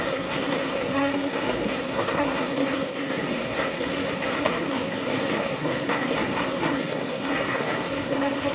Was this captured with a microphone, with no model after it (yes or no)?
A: no